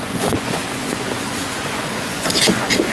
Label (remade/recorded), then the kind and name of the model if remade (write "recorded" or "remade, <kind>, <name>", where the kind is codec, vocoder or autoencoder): remade, vocoder, Vocos